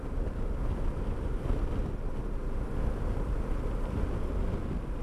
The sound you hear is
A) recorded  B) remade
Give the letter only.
A